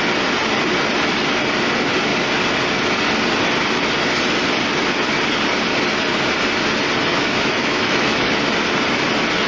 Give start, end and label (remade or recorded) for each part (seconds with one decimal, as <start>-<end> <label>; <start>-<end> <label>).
0.0-7.1 recorded; 7.1-8.4 remade; 8.4-9.5 recorded